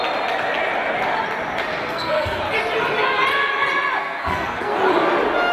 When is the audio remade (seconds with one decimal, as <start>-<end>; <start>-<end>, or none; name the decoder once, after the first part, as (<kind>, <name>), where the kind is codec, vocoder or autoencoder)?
1.8-2.4 (codec, SNAC); 4.0-4.8